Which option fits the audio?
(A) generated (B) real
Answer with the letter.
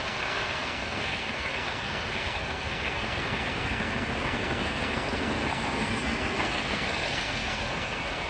A